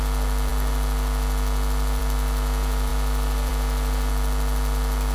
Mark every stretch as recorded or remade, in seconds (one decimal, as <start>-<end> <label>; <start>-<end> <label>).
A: 0.0-5.1 recorded